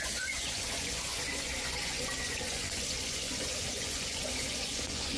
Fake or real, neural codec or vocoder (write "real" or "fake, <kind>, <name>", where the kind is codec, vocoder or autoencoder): fake, vocoder, Vocos